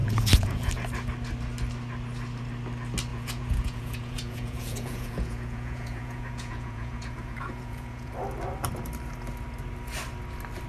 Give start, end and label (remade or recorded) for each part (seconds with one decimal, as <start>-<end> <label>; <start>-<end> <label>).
0.0-0.7 remade; 0.7-3.1 recorded; 3.1-8.1 remade; 8.1-10.7 recorded